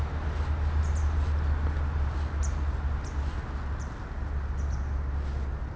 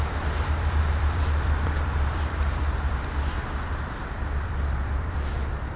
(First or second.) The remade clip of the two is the second